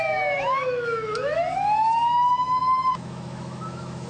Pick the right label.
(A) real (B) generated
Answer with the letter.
B